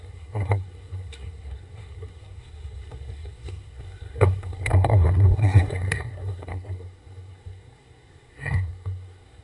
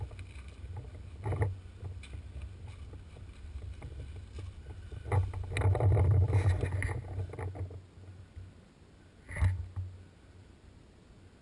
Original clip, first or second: second